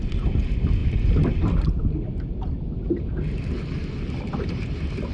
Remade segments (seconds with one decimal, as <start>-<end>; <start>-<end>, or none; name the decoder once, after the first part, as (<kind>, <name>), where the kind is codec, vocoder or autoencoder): 0.8-1.8 (vocoder, BigVGAN v2)